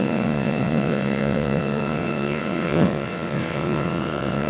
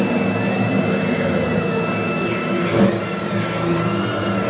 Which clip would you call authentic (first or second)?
second